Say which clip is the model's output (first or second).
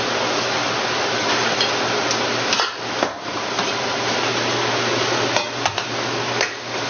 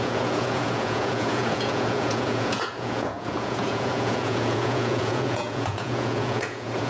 second